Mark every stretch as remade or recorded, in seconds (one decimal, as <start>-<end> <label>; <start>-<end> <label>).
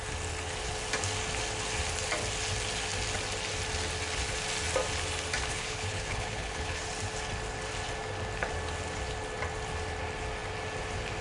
0.0-5.5 recorded; 5.5-6.8 remade; 6.8-11.2 recorded